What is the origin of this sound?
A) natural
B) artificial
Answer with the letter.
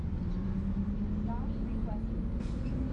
A